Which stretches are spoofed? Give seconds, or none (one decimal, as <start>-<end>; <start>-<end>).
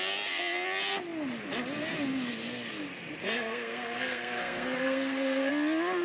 3.2-5.5